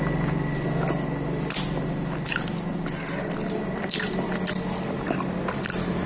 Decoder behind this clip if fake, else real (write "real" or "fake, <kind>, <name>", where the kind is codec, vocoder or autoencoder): real